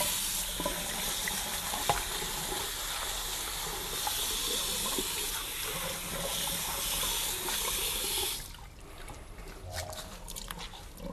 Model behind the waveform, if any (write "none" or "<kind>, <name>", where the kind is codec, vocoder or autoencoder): none